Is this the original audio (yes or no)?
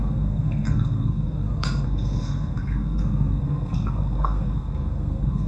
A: no